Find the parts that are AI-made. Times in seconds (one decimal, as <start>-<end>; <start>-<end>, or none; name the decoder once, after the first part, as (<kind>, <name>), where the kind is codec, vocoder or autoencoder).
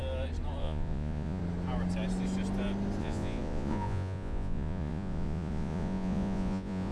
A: 0.6-1.4 (vocoder, Vocos); 3.0-6.9